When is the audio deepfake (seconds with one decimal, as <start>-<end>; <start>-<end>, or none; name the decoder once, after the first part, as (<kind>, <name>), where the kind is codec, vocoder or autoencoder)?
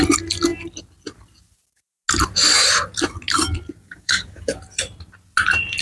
3.8-4.6 (codec, DAC)